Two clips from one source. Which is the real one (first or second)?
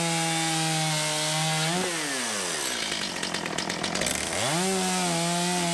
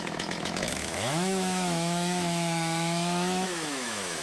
first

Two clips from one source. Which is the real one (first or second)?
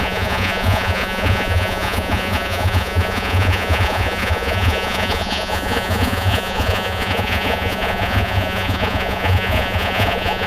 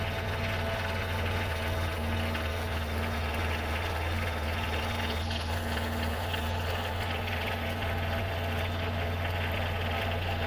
second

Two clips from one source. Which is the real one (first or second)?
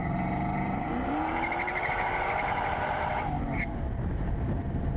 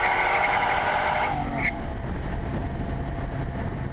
second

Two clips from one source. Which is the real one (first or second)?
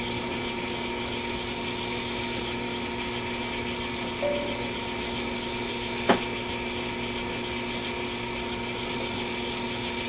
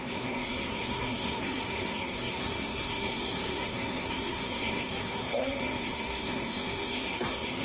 first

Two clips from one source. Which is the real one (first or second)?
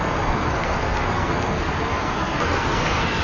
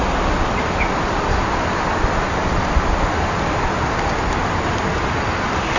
second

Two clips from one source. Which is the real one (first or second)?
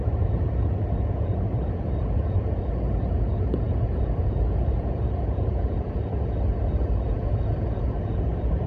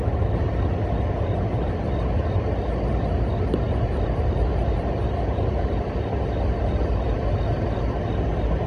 second